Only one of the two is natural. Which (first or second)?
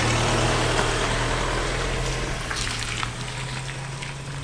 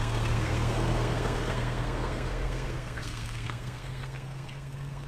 first